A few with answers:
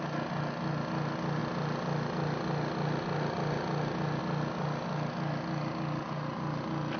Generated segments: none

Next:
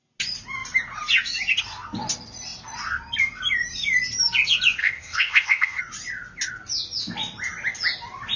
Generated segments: 4.8-5.8 (codec, ZipCodec)

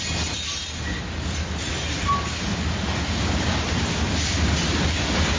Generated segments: none